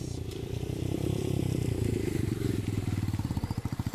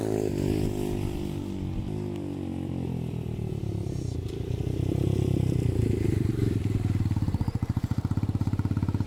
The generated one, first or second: first